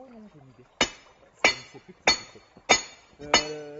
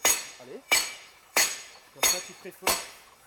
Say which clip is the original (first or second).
first